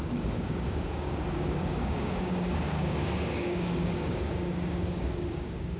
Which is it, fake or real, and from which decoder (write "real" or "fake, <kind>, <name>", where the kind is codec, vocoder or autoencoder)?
fake, codec, DAC